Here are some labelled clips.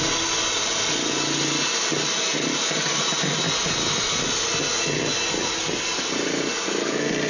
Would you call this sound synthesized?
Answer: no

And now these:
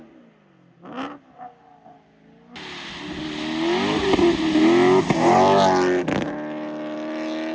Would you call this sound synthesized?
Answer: no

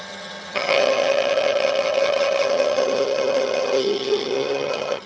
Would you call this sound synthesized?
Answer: yes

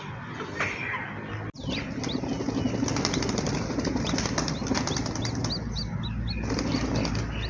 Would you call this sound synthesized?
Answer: no